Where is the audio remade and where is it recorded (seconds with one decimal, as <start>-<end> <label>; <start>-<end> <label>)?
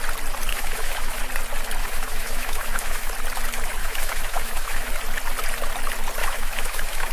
0.0-0.5 recorded; 0.5-1.2 remade; 1.2-1.8 recorded; 1.8-3.1 remade; 3.1-3.8 recorded; 3.8-4.9 remade; 4.9-6.2 recorded; 6.2-7.1 remade